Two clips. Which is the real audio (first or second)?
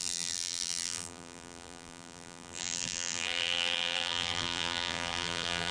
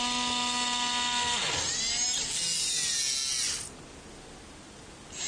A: second